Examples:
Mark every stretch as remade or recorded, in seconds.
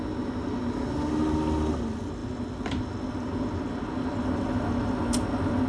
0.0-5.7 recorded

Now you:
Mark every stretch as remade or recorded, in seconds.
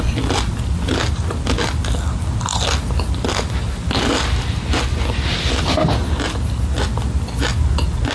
0.0-8.1 recorded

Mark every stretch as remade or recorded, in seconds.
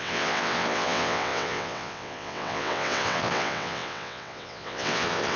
0.0-5.4 remade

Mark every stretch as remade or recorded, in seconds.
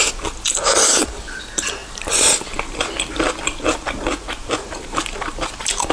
0.0-5.9 recorded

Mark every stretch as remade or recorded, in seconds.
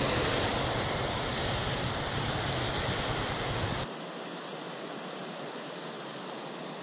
0.0-6.8 recorded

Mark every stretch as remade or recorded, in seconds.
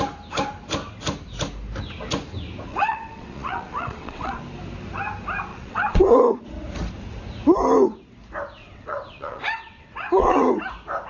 0.0-2.7 recorded; 2.7-4.4 remade; 4.4-5.5 recorded; 5.5-6.4 remade; 6.4-8.6 recorded; 8.6-10.5 remade; 10.5-11.1 recorded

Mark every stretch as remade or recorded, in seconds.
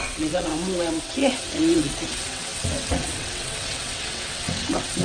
0.0-0.5 remade; 0.5-1.0 recorded; 1.0-5.0 remade